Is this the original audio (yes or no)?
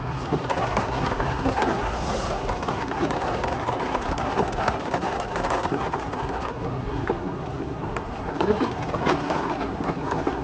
no